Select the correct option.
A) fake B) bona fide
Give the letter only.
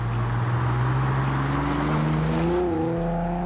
B